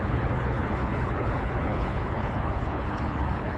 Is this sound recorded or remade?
remade